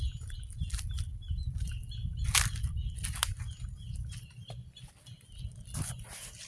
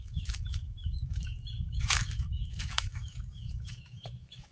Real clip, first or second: first